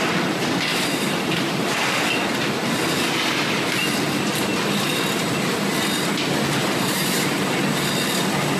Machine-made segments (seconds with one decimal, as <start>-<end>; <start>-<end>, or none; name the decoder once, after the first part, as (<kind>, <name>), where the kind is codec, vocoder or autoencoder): 0.7-1.7 (vocoder, BigVGAN v2); 6.6-7.6